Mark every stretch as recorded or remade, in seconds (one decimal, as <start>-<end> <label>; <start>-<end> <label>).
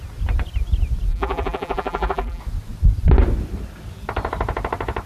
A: 0.0-1.1 recorded; 1.1-2.4 remade; 2.4-5.1 recorded